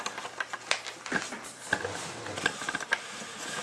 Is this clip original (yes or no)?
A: yes